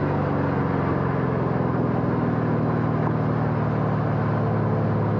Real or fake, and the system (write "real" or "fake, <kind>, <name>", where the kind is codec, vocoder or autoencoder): real